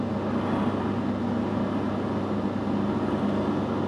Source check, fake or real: real